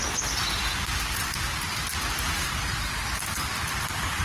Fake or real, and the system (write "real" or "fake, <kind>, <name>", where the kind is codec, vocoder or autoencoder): real